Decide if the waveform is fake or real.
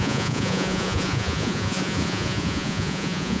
fake